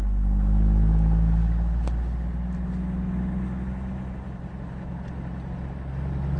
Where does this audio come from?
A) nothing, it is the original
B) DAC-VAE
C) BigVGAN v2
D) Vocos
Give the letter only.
A